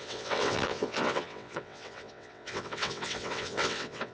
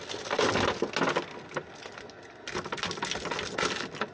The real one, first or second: second